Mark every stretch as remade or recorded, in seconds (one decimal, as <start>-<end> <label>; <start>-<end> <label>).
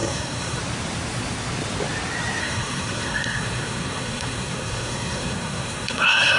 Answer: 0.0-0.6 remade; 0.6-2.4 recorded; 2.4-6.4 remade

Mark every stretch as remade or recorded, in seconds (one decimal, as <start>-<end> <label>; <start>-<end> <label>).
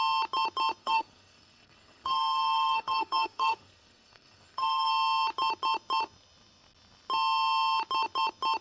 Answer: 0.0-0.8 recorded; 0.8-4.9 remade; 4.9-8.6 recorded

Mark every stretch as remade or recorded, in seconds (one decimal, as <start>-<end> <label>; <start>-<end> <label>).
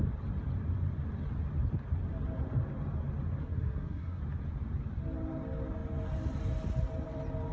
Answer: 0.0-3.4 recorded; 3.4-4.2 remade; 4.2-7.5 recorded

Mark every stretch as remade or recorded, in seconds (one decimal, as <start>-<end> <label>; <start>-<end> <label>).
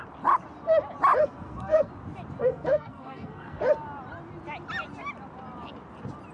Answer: 0.0-1.2 recorded; 1.2-1.9 remade; 1.9-2.4 recorded; 2.4-3.6 remade; 3.6-6.3 recorded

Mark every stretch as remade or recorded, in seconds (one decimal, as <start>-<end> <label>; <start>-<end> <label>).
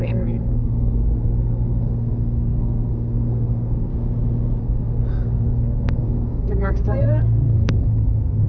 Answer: 0.0-3.9 remade; 3.9-4.6 recorded; 4.6-8.5 remade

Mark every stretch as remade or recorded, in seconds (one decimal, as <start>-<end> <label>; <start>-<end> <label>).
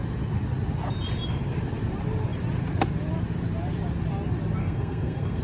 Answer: 0.0-4.6 recorded; 4.6-5.4 remade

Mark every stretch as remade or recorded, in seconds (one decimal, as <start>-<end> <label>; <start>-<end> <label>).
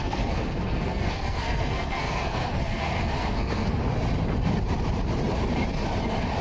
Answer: 0.0-3.8 remade; 3.8-6.4 recorded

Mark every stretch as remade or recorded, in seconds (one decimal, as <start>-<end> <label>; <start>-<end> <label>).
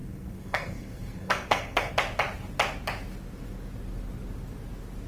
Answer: 0.0-1.9 remade; 1.9-5.1 recorded